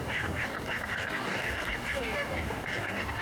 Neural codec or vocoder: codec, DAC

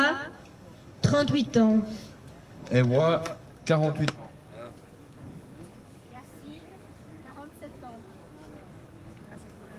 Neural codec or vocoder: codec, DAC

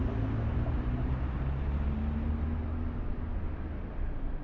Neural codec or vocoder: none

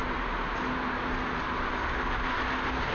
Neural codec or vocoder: none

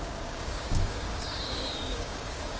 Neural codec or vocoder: codec, DAC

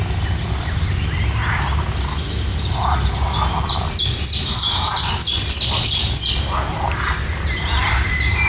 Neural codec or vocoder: none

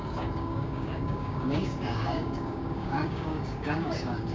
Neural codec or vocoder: codec, DAC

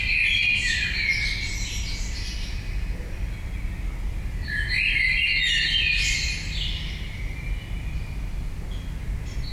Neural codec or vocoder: none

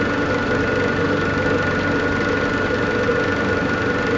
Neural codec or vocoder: none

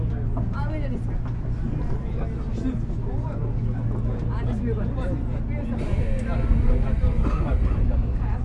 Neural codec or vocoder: none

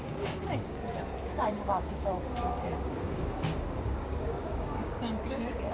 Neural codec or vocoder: codec, DAC